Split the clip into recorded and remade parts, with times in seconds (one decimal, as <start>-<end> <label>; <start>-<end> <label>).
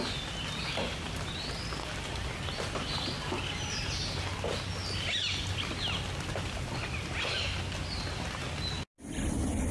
0.0-9.7 recorded